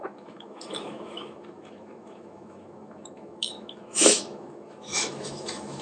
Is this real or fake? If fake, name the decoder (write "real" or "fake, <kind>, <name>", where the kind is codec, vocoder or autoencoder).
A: fake, autoencoder, DAC-VAE